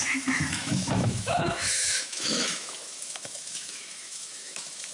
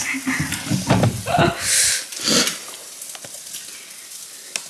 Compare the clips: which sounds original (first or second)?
second